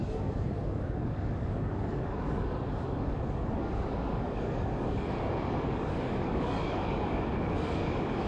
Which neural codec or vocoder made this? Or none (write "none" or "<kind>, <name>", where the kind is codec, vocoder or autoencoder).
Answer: codec, DAC